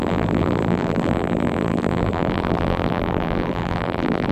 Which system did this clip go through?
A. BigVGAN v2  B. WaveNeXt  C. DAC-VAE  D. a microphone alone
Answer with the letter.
A